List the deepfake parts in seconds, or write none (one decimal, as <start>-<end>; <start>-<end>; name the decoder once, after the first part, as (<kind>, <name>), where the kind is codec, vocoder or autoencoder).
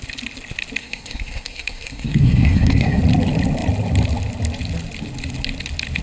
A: 0.8-3.0 (codec, SNAC)